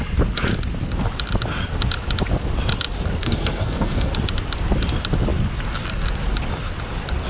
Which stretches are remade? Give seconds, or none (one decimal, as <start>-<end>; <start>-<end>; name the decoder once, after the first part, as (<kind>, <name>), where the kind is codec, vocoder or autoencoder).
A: 3.2-4.1 (codec, SNAC)